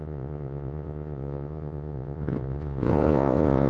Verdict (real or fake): fake